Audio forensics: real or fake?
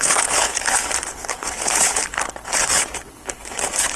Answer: fake